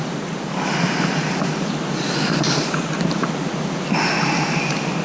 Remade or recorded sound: recorded